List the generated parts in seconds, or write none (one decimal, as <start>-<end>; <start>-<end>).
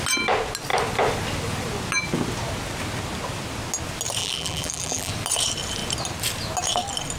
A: 4.2-5.1